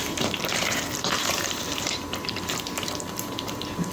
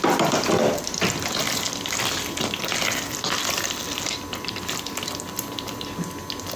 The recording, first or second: second